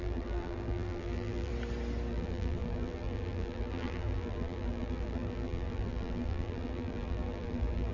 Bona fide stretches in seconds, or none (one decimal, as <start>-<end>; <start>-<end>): 1.5-2.1